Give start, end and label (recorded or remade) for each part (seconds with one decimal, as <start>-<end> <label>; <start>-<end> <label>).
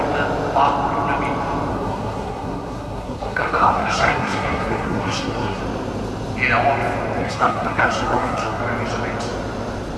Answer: 0.0-1.7 recorded; 1.7-5.6 remade; 5.6-7.2 recorded; 7.2-8.6 remade; 8.6-10.0 recorded